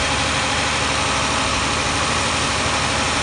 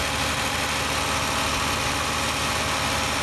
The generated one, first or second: first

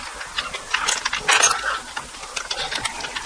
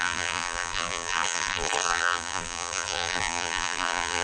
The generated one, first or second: second